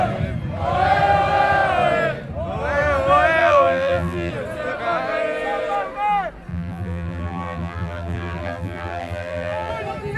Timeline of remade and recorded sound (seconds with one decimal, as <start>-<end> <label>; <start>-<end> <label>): 0.0-3.4 recorded; 3.4-4.3 remade; 4.3-6.5 recorded; 6.5-9.7 remade; 9.7-10.2 recorded